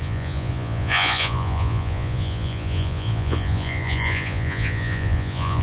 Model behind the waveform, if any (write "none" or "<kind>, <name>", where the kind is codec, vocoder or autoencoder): vocoder, Vocos